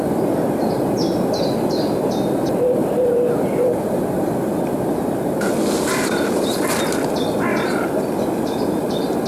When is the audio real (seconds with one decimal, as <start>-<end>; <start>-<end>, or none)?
0.0-2.8; 4.3-7.5; 8.2-9.3